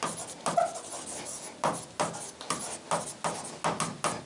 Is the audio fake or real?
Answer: real